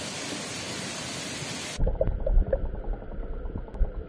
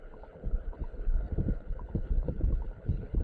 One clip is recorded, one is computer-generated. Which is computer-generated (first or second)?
second